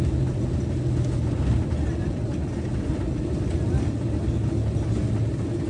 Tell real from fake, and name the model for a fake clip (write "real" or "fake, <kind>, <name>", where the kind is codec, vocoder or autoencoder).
real